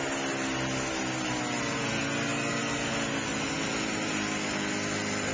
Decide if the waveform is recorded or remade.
recorded